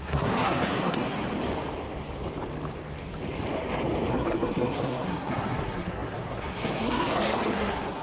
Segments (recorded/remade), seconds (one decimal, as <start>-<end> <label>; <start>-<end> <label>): 0.0-1.2 remade; 1.2-4.1 recorded; 4.1-8.0 remade